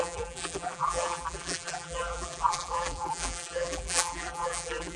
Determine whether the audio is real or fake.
fake